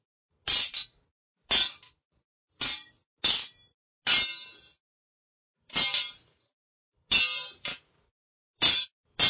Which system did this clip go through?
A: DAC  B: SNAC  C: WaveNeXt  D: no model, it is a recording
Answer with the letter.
D